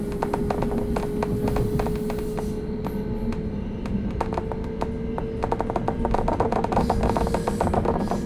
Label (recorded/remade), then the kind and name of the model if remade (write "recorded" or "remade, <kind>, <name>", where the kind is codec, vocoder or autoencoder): recorded